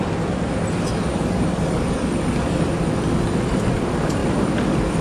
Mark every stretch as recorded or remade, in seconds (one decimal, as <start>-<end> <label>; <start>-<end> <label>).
0.0-1.1 recorded; 1.1-2.6 remade; 2.6-5.0 recorded